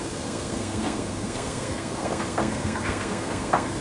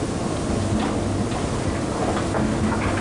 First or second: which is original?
second